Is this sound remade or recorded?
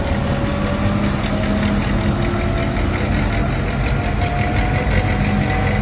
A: recorded